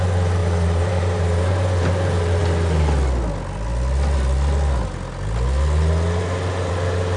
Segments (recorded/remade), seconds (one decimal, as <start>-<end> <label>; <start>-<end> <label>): 0.0-0.4 recorded; 0.4-1.9 remade; 1.9-7.2 recorded